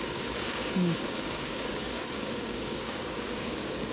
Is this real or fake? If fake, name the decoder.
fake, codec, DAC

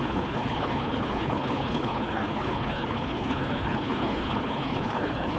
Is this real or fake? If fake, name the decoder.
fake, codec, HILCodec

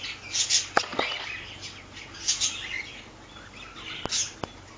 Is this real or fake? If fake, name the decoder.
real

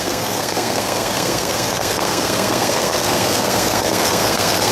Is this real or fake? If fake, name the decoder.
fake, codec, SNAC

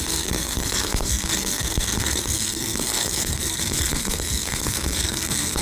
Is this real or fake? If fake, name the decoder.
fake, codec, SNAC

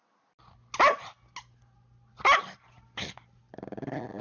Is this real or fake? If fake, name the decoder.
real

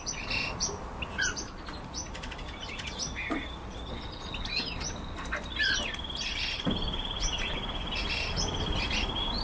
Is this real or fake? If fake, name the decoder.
real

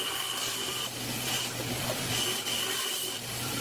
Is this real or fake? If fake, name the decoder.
fake, vocoder, BigVGAN v2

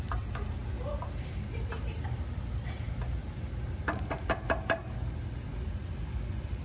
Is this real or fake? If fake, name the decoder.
real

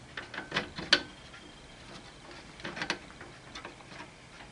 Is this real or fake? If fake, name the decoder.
real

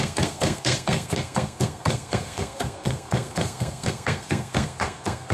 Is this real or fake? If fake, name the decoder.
fake, codec, SNAC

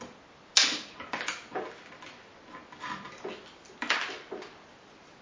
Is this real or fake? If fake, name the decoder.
real